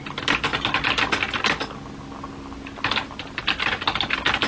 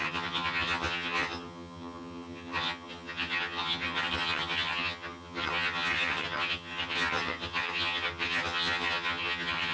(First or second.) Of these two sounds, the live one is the first